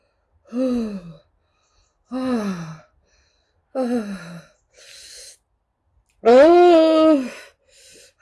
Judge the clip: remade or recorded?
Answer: recorded